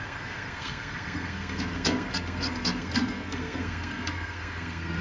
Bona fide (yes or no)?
no